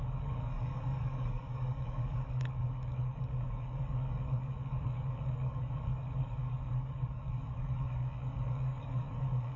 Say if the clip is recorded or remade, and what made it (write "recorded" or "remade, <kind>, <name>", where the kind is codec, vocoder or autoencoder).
remade, codec, DAC